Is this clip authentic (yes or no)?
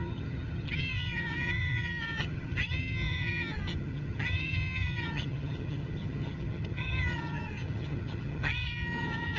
no